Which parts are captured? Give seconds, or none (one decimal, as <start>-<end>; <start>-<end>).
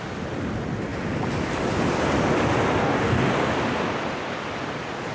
0.0-2.8; 3.3-5.1